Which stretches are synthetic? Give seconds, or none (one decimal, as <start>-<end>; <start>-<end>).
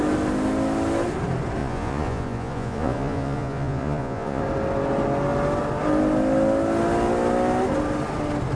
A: 1.6-4.4